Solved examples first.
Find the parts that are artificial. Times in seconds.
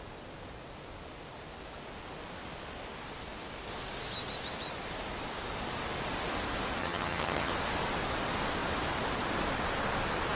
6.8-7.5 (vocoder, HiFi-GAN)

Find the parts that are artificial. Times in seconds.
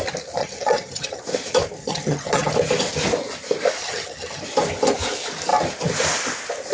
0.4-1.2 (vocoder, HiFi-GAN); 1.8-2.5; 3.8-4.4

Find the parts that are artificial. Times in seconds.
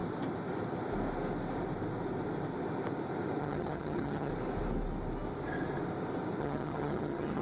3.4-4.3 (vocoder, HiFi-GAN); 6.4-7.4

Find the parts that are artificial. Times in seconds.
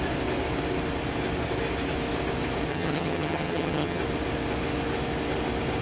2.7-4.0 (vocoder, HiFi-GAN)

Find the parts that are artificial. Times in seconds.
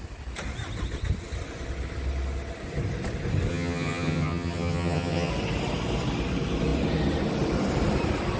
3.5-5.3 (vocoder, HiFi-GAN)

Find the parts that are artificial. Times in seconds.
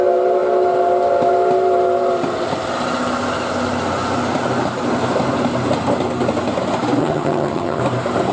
7.0-7.8 (vocoder, HiFi-GAN)